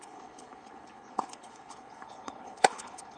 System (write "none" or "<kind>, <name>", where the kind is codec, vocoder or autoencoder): codec, HILCodec